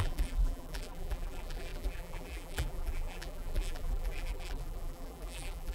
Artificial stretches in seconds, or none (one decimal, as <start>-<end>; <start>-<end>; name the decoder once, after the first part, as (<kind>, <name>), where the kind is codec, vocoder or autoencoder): 0.0-5.7 (vocoder, BigVGAN v2)